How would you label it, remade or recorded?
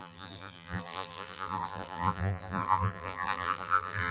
remade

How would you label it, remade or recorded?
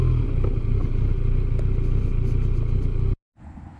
recorded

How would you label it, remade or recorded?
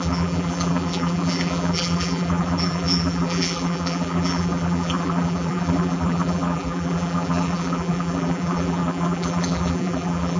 remade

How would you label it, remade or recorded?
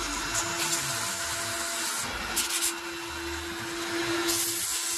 recorded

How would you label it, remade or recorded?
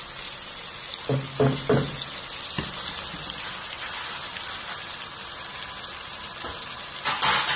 recorded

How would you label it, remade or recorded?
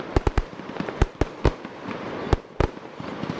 remade